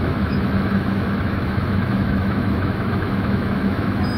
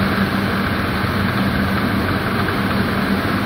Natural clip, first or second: second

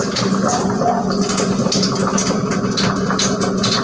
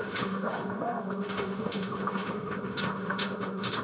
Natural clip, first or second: first